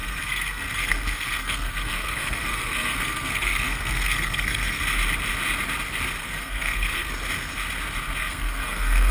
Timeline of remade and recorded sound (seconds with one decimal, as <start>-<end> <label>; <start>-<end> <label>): 0.0-4.8 remade; 4.8-6.2 recorded; 6.2-7.1 remade; 7.1-8.2 recorded; 8.2-9.1 remade